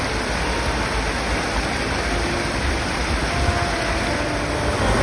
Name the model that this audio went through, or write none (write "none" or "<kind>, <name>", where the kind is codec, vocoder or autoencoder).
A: none